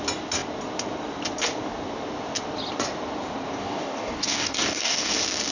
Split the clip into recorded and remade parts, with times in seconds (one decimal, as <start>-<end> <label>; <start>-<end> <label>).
0.0-3.6 recorded; 3.6-5.1 remade; 5.1-5.5 recorded